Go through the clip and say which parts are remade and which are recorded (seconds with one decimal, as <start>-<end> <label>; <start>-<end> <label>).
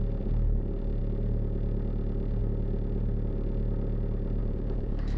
0.0-4.4 recorded; 4.4-5.2 remade